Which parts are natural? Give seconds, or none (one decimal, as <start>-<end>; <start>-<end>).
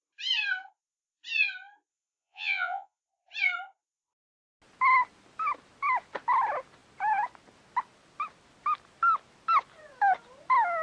0.0-1.9; 3.0-10.8